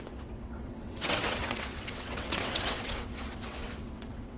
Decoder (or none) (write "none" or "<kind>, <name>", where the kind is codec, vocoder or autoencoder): vocoder, WaveNeXt